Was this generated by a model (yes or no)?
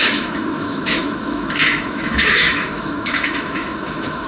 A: yes